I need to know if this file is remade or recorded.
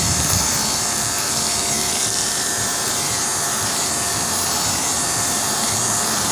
remade